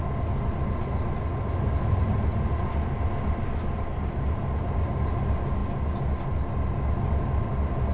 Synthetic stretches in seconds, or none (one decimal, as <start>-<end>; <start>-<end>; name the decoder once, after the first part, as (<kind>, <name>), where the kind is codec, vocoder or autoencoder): none